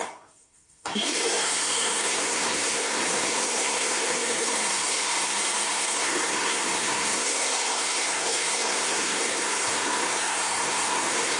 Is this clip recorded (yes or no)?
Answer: no